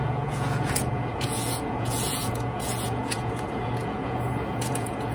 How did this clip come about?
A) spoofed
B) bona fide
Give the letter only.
A